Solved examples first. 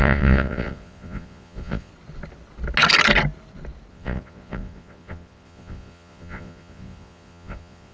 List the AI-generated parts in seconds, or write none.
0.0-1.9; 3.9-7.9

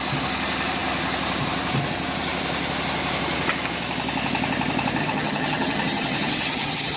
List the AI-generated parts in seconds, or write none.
5.0-7.0

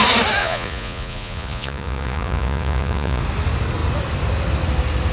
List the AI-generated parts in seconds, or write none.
0.4-3.2

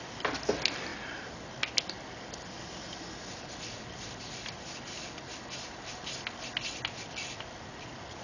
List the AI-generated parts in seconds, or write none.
none

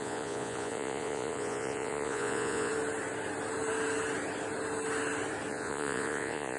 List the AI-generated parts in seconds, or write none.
0.0-2.7; 5.5-6.6

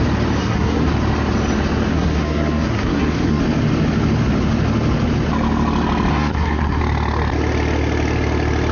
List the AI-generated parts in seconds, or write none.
0.4-0.9; 1.9-3.4; 6.1-6.8

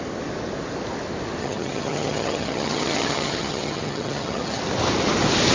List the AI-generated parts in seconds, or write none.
1.4-4.6

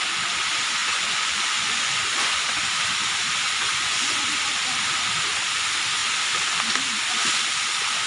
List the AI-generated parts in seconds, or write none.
0.8-2.7; 3.4-4.2